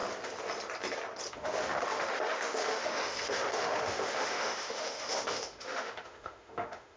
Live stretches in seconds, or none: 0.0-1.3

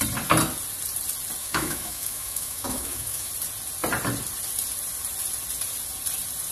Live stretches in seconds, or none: 0.0-1.4; 3.3-6.5